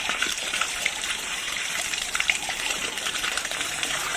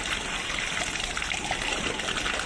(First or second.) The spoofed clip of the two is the first